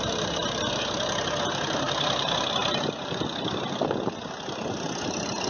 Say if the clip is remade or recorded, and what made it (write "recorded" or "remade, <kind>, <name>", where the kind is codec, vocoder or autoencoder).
remade, vocoder, BigVGAN v2